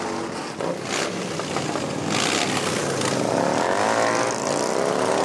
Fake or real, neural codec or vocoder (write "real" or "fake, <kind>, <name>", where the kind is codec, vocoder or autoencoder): real